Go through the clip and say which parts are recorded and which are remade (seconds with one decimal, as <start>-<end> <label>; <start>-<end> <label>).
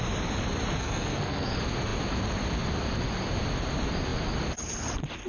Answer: 0.0-0.8 recorded; 0.8-1.5 remade; 1.5-5.3 recorded